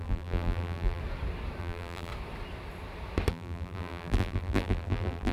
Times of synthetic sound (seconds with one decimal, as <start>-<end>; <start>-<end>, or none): 0.0-1.0; 1.6-2.1; 3.3-5.3